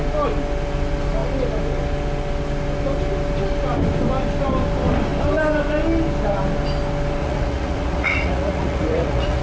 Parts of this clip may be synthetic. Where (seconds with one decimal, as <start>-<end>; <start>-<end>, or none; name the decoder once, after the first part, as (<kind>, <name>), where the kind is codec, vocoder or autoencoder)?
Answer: 7.2-9.4 (vocoder, Vocos)